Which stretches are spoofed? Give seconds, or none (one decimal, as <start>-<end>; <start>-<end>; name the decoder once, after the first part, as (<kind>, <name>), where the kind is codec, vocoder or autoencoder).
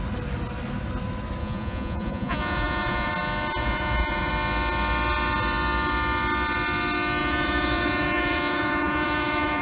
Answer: 1.4-3.1 (vocoder, Vocos); 3.6-4.3; 7.2-9.6